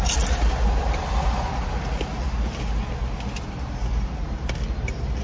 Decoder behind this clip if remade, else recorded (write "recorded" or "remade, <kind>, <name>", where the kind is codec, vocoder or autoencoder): recorded